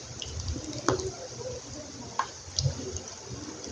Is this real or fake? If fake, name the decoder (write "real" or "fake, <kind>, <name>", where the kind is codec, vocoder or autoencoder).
real